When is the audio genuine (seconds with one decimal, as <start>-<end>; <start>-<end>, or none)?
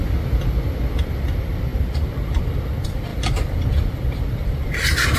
0.0-5.2